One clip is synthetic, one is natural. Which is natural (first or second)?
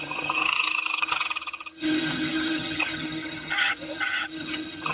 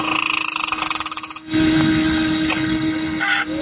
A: second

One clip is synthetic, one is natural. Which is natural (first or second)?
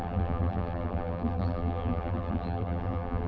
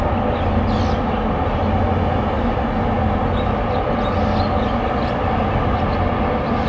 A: second